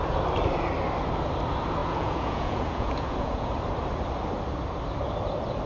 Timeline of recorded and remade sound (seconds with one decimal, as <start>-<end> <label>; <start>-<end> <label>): 0.0-1.8 recorded; 1.8-3.5 remade; 3.5-5.7 recorded